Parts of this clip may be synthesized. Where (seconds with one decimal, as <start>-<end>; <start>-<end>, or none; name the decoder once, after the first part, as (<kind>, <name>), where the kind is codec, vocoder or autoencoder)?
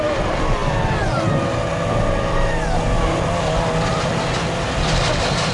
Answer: none